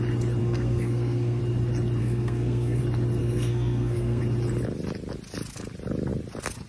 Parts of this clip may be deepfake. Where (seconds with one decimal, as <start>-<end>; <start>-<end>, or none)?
0.4-1.4; 2.0-2.8; 3.2-4.2